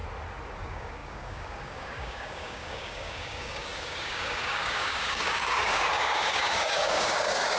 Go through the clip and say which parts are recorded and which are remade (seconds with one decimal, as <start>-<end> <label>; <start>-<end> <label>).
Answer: 0.0-0.6 recorded; 0.6-7.6 remade